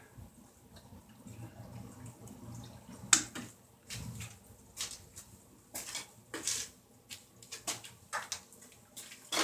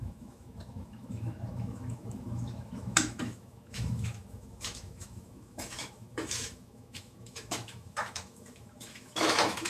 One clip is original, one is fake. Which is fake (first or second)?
second